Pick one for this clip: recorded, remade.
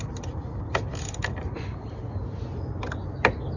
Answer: recorded